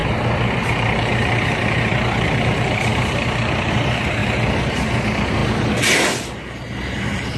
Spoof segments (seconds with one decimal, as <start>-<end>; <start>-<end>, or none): 0.6-4.2; 4.9-5.4

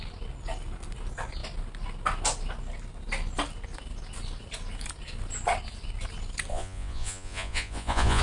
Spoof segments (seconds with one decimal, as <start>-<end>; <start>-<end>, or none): 6.5-8.2

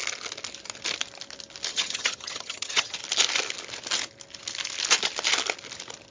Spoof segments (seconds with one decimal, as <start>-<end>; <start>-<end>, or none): 1.7-3.0

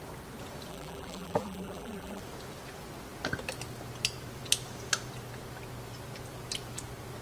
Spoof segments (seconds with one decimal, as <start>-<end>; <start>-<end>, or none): 0.7-2.2

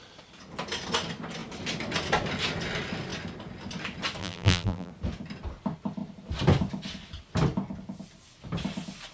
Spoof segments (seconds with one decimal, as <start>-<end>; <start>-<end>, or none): 4.2-4.9

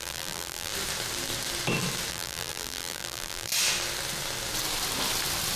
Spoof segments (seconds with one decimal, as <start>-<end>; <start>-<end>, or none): 0.0-0.7; 2.1-3.5

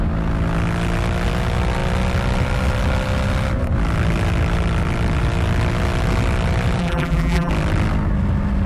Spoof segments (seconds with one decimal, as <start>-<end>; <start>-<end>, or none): 6.8-7.5

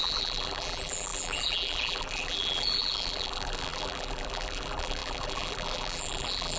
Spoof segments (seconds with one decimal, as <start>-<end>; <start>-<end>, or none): 0.0-6.6